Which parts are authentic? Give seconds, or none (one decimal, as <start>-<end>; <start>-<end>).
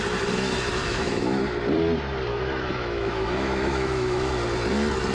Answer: 0.0-0.8; 1.4-2.3; 4.3-5.1